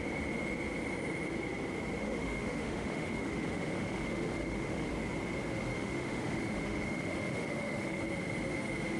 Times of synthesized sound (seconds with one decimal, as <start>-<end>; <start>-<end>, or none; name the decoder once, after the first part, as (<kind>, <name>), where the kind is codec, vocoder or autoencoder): 2.0-4.9 (autoencoder, DAC-VAE); 5.7-8.0